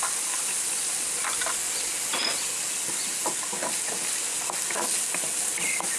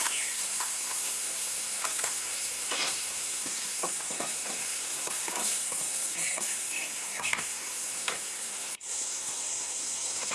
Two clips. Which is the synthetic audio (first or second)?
second